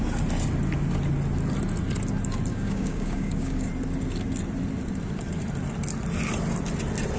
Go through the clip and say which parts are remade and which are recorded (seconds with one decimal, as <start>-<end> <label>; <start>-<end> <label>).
0.0-2.5 recorded; 2.5-3.7 remade; 3.7-7.2 recorded